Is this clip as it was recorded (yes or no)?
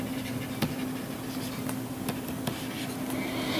yes